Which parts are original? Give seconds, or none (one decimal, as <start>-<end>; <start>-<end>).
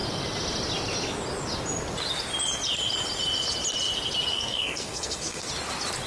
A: 0.0-4.3; 5.5-6.1